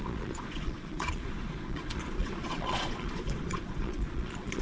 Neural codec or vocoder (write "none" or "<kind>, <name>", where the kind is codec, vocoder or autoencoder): vocoder, Vocos